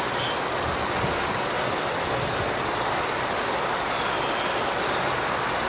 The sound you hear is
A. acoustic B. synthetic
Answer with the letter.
A